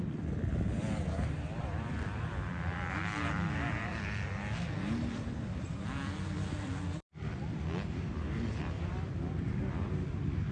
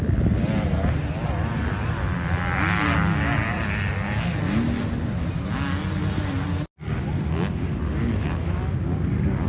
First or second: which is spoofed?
first